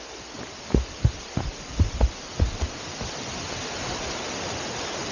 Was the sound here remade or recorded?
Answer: recorded